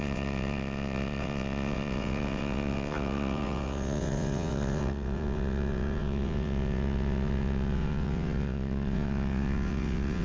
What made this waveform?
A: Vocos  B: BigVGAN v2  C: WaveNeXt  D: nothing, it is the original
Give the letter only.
C